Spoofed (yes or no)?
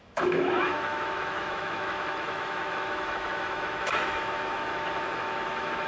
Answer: yes